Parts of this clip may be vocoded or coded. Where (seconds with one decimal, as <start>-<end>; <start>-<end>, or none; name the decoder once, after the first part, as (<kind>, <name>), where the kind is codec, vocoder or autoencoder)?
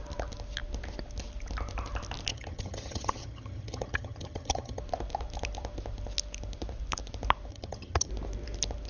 2.3-4.8 (vocoder, HiFi-GAN); 7.5-8.1